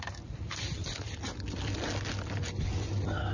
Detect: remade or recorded recorded